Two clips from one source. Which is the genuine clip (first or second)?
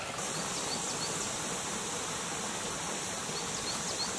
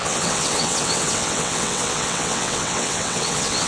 first